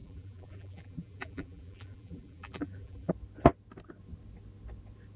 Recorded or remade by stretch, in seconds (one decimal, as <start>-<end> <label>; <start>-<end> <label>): 0.0-3.1 remade; 3.1-5.2 recorded